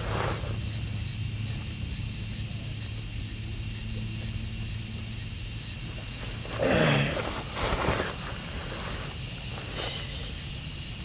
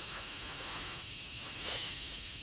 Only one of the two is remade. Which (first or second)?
second